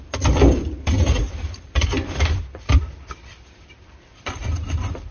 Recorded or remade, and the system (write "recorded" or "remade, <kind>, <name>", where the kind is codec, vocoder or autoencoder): remade, vocoder, BigVGAN v2